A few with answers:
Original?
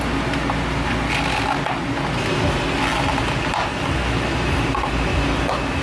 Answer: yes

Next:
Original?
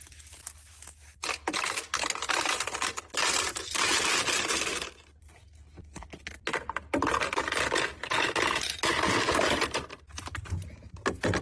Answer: yes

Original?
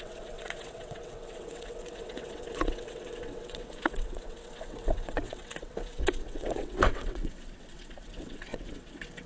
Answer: no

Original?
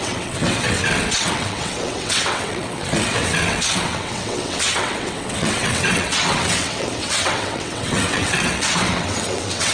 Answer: no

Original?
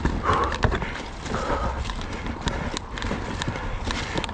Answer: yes